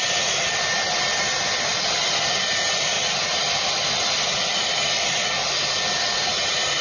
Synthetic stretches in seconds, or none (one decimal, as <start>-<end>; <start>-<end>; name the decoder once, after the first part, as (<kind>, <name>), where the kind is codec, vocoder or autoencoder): none